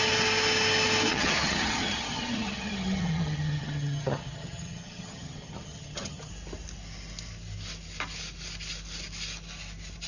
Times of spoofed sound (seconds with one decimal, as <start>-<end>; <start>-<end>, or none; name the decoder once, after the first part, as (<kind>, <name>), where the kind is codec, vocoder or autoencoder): 1.1-6.3 (vocoder, HiFi-GAN)